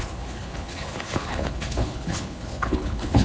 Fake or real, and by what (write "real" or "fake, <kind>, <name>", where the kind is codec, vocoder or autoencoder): fake, codec, HILCodec